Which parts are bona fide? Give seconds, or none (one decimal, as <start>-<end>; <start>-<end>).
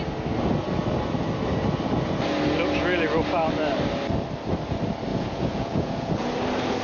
0.0-5.1; 6.1-6.8